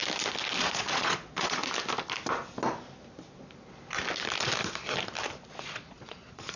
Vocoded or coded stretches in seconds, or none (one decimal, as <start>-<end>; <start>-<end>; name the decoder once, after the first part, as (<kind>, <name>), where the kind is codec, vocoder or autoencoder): 0.6-1.6 (vocoder, Vocos); 5.5-6.6